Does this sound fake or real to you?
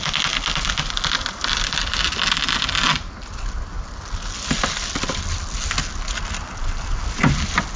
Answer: real